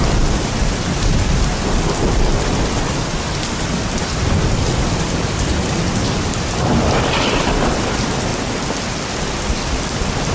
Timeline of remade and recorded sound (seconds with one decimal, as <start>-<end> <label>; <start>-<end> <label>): 0.0-8.3 remade; 8.3-9.1 recorded; 9.1-10.3 remade